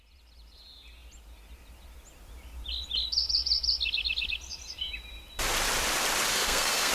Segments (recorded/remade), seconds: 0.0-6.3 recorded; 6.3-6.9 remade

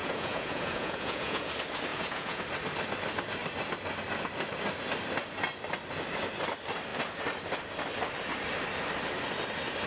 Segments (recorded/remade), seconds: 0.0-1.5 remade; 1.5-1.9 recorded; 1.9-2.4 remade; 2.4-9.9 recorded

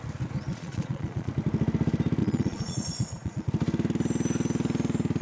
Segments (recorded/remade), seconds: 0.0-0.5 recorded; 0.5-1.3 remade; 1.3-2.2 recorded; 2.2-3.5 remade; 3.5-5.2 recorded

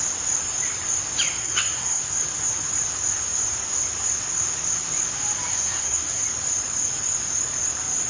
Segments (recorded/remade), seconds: 0.0-1.4 recorded; 1.4-2.0 remade; 2.0-5.5 recorded; 5.5-6.2 remade; 6.2-8.1 recorded